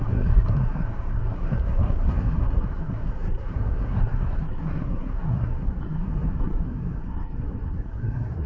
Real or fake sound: fake